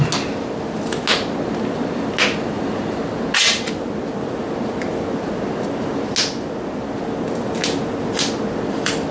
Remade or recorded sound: recorded